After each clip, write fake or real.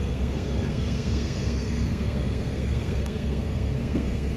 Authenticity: fake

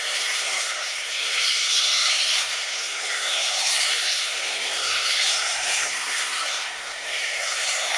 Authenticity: fake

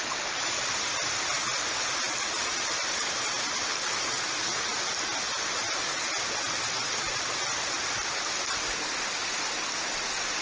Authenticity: real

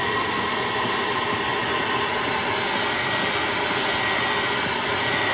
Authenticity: real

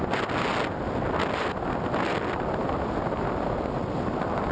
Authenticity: real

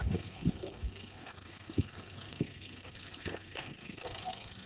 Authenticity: fake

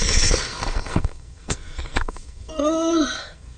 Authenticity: fake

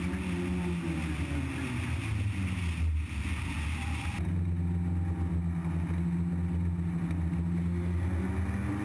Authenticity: real